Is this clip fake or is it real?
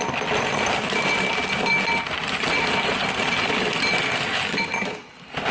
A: real